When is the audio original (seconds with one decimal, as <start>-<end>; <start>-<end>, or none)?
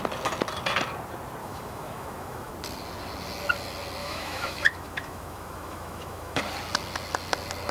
0.0-1.4; 2.5-4.0; 6.4-7.7